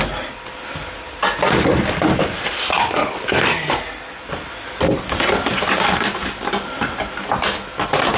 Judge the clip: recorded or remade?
recorded